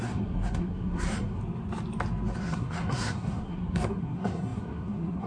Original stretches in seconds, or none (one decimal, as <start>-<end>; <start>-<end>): 1.4-2.4